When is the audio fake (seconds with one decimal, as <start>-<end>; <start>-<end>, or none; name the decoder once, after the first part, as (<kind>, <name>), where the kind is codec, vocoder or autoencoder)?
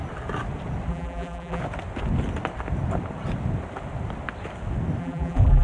0.9-1.6 (vocoder, BigVGAN v2); 5.0-5.6